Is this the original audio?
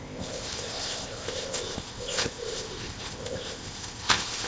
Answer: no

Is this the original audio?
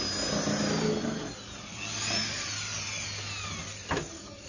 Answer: yes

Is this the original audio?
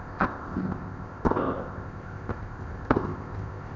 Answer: no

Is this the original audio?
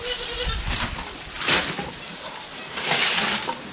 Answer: yes